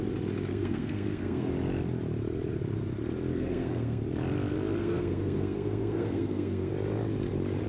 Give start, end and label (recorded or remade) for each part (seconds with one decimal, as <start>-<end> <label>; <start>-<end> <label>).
0.0-0.5 recorded; 0.5-1.5 remade; 1.5-3.3 recorded; 3.3-4.0 remade; 4.0-4.8 recorded; 4.8-6.7 remade; 6.7-7.7 recorded